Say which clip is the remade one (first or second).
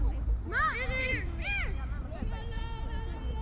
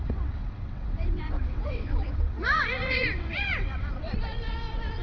second